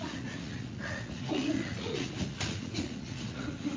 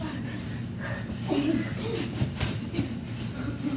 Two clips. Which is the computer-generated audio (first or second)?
first